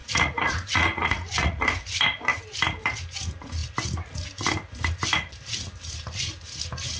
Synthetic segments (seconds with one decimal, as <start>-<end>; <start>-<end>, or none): 0.0-1.6